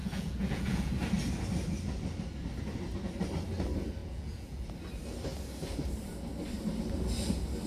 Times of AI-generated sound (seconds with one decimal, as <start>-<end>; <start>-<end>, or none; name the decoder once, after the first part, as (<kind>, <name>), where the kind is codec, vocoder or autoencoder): 0.0-0.9 (vocoder, Vocos); 4.0-4.7

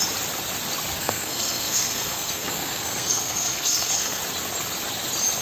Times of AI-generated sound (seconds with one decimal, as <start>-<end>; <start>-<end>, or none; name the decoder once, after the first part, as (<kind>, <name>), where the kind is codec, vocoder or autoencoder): 1.0-4.2 (codec, SNAC)

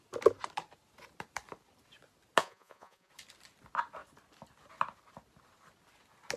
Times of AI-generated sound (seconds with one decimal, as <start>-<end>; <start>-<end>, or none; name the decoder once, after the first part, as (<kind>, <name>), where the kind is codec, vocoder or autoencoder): 2.4-3.1 (vocoder, Vocos)

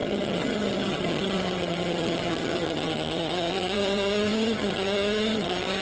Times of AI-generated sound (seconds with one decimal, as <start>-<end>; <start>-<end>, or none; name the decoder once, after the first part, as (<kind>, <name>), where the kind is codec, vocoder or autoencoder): 0.0-5.8 (vocoder, HiFi-GAN)